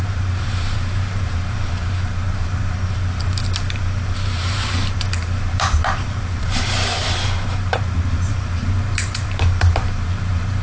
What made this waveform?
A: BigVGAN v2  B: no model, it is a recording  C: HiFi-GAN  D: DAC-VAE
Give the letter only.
A